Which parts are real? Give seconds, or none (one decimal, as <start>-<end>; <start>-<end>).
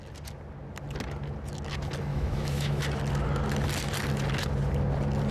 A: 0.0-2.1; 2.8-5.3